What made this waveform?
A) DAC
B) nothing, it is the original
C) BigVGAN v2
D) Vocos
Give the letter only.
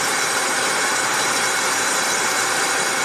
C